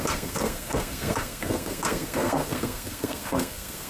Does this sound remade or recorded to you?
remade